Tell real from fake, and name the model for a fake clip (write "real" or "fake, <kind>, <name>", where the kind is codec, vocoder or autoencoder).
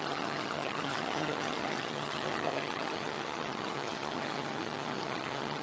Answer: fake, vocoder, HiFi-GAN